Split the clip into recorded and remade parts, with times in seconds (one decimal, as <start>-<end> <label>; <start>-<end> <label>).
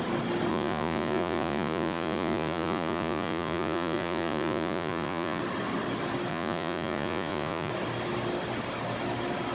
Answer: 0.0-0.5 recorded; 0.5-5.4 remade; 5.4-6.3 recorded; 6.3-7.7 remade; 7.7-9.5 recorded